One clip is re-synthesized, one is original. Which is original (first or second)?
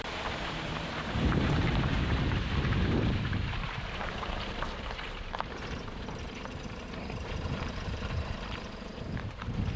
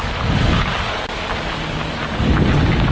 second